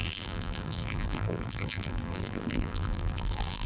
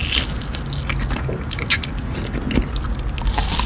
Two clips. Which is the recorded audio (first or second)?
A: second